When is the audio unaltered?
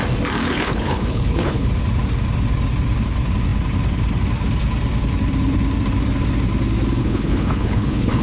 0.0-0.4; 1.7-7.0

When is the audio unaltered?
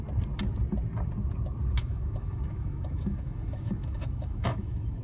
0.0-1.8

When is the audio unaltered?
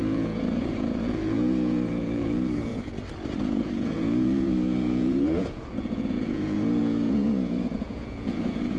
2.7-3.4